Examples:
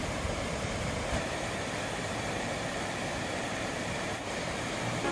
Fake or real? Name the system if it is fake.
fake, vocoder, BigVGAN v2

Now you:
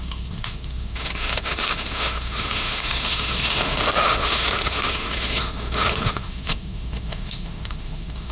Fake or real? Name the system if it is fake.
fake, autoencoder, DAC-VAE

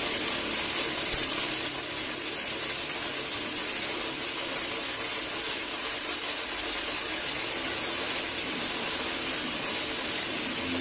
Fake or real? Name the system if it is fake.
real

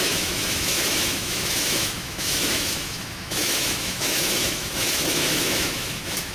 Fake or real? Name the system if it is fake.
fake, autoencoder, DAC-VAE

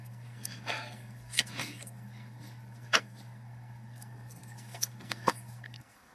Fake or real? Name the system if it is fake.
fake, codec, SNAC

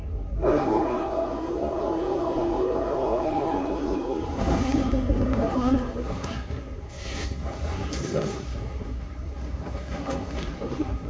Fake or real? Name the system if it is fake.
fake, codec, SNAC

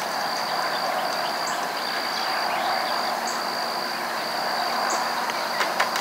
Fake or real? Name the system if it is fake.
real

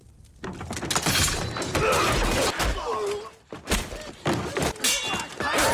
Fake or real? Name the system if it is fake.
real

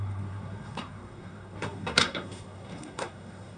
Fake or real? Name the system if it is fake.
fake, codec, SNAC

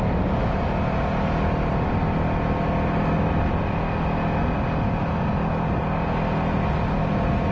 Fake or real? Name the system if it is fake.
real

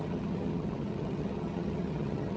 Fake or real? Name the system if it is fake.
fake, vocoder, HiFi-GAN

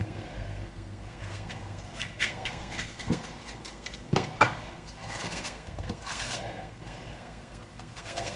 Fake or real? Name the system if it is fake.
fake, codec, SNAC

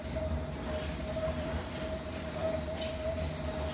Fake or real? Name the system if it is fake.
real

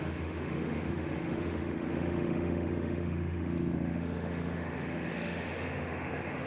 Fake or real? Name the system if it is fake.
fake, autoencoder, DAC-VAE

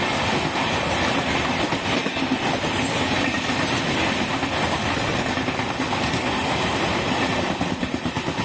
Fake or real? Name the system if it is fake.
real